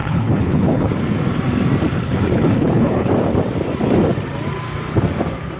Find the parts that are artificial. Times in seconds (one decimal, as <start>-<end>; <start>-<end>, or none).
0.0-0.9; 2.0-3.1